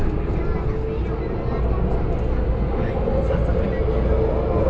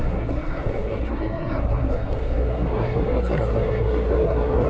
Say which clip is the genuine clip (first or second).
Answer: first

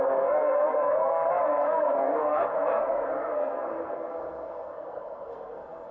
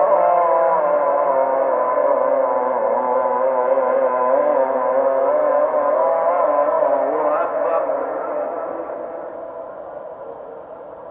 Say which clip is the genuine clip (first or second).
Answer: second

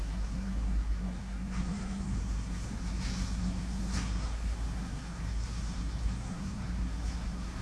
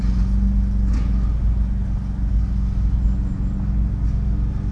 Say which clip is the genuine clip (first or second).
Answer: second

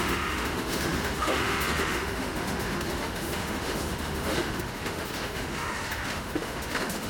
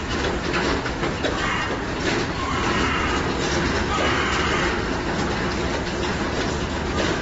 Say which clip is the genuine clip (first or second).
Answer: second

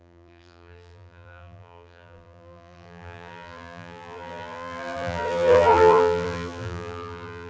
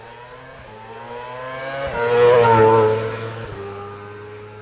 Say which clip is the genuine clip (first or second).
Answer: second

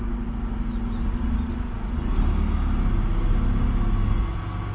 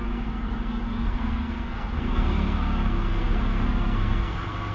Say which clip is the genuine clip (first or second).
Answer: first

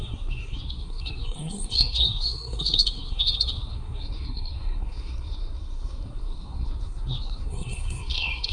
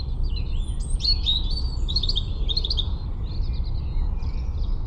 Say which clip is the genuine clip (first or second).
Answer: second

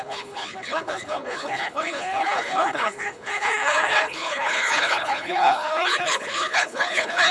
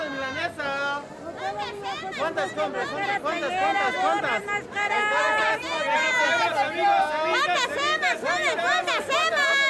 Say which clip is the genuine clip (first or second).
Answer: second